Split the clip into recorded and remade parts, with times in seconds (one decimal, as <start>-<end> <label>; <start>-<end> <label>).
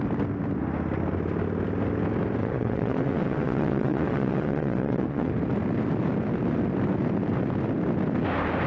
0.0-2.4 recorded; 2.4-5.3 remade; 5.3-8.7 recorded